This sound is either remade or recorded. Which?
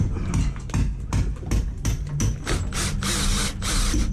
recorded